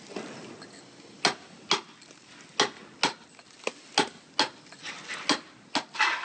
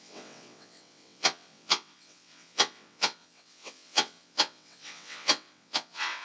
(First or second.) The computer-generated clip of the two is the second